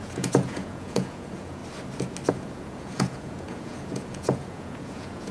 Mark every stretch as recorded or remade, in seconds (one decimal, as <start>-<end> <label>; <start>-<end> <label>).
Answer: 0.0-1.6 remade; 1.6-2.3 recorded; 2.3-5.3 remade